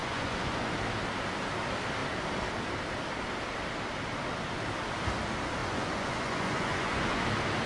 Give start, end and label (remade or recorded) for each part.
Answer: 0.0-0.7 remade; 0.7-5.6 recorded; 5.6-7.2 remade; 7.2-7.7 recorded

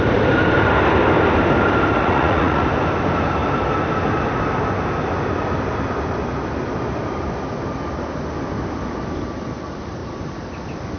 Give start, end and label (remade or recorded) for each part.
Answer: 0.0-2.0 recorded; 2.0-2.6 remade; 2.6-11.0 recorded

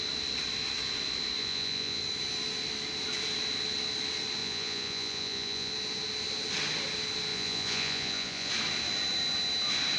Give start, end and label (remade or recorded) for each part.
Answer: 0.0-1.4 recorded; 1.4-2.0 remade; 2.0-4.4 recorded; 4.4-5.7 remade; 5.7-7.3 recorded; 7.3-8.5 remade; 8.5-10.0 recorded

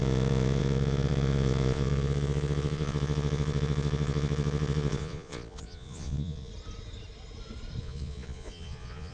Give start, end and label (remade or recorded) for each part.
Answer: 0.0-6.5 remade; 6.5-7.8 recorded; 7.8-9.1 remade

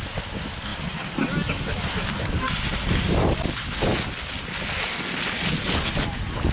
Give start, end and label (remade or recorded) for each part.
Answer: 0.0-6.5 recorded

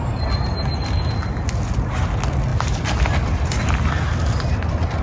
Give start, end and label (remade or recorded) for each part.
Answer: 0.0-5.0 recorded

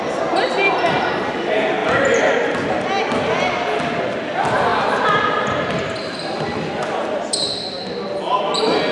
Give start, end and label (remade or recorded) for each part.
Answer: 0.0-8.9 recorded

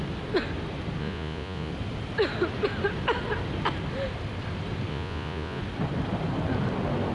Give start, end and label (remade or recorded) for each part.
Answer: 0.0-1.0 recorded; 1.0-1.7 remade; 1.7-4.9 recorded; 4.9-5.6 remade; 5.6-7.1 recorded